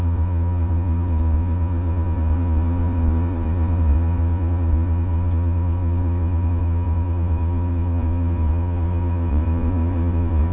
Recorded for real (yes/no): no